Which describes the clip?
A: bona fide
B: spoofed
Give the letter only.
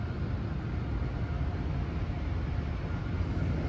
A